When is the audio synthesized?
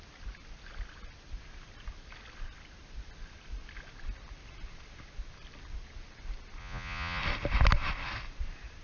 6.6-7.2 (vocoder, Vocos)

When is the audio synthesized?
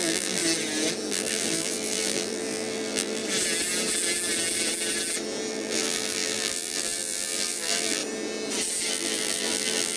0.0-0.4 (vocoder, BigVGAN v2); 1.1-3.2; 5.5-8.0; 8.9-10.0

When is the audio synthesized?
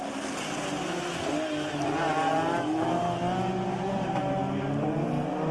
2.5-3.2 (autoencoder, DAC-VAE)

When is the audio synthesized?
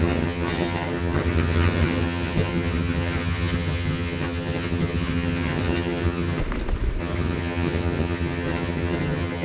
0.0-6.4 (vocoder, HiFi-GAN); 7.0-9.4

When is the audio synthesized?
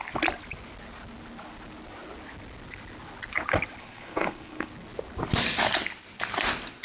3.8-4.7 (codec, SNAC)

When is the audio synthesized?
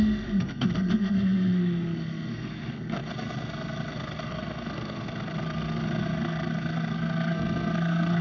0.0-8.2 (codec, SNAC)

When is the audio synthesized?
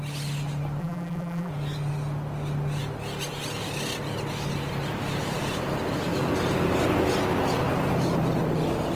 0.8-1.5 (vocoder, BigVGAN v2)